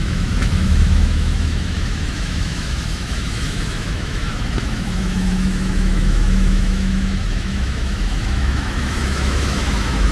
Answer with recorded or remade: remade